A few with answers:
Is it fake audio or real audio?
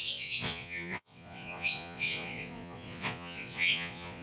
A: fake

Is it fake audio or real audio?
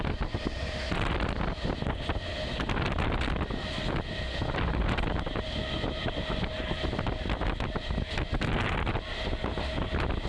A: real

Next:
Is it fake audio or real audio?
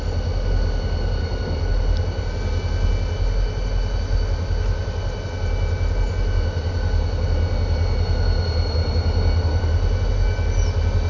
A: real